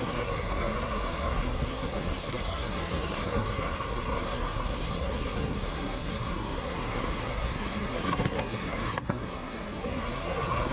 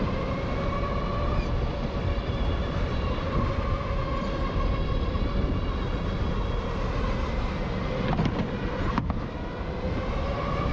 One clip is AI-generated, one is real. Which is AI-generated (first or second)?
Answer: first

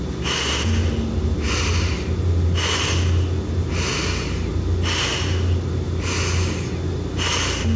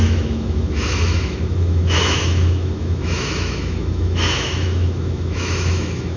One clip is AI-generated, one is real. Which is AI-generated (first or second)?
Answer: second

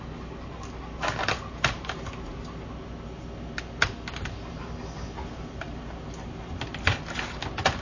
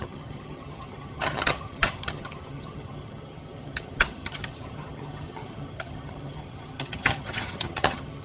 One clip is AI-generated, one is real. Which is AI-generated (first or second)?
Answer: second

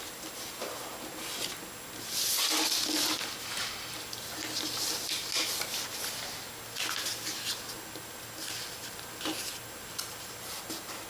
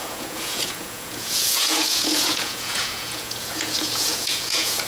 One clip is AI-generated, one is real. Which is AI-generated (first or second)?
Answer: second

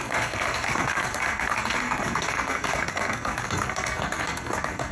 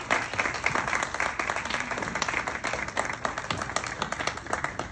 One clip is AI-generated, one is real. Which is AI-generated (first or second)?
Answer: first